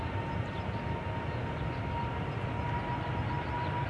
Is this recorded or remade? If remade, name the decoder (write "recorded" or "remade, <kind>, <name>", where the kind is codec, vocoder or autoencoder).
recorded